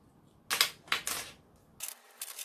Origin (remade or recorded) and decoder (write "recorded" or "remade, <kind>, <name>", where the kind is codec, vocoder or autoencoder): recorded